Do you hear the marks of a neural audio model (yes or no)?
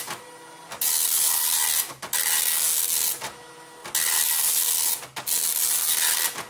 no